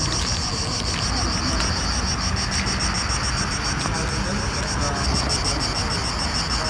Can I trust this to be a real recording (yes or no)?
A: yes